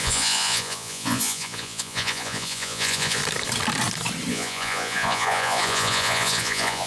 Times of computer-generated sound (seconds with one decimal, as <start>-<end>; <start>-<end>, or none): 0.0-3.2; 4.3-6.9